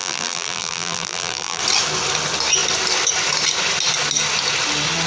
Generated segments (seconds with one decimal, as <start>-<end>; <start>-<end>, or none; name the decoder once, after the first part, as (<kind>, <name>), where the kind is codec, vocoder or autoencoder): 0.0-1.6 (vocoder, BigVGAN v2)